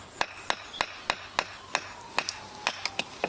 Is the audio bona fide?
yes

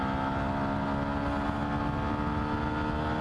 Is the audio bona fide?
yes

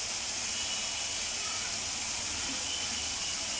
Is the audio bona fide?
yes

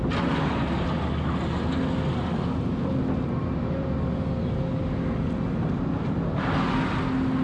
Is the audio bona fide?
yes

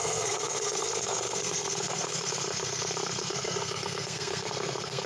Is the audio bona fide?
no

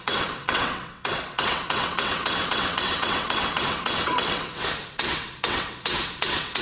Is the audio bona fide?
no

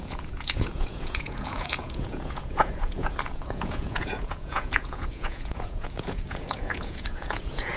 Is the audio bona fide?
no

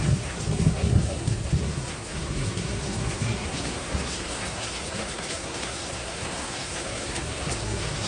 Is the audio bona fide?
no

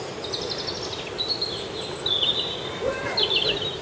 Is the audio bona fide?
yes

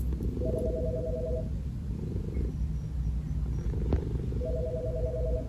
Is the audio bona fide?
yes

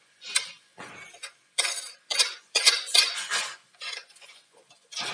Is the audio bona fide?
no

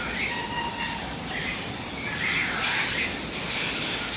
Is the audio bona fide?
yes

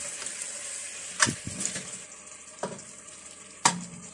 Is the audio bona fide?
yes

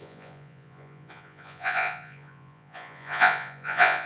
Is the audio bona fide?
no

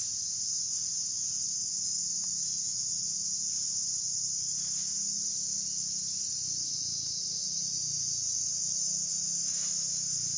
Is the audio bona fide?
yes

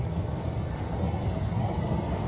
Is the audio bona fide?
no